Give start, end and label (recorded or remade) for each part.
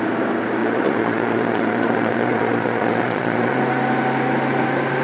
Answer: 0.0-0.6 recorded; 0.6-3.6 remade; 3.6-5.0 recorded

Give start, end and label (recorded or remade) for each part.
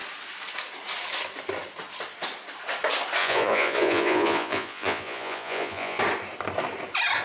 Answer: 0.0-3.2 recorded; 3.2-6.0 remade; 6.0-7.2 recorded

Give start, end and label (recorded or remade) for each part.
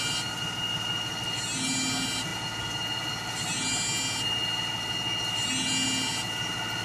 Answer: 0.0-6.8 recorded